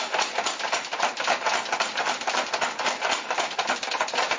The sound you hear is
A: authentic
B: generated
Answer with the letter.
A